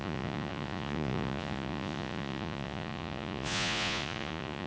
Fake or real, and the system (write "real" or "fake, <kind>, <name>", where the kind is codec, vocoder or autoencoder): fake, vocoder, Vocos